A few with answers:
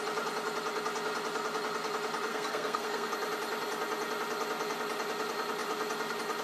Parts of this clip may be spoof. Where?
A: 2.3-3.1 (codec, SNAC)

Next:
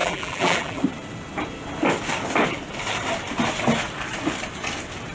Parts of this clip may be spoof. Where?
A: 0.0-0.8 (vocoder, BigVGAN v2)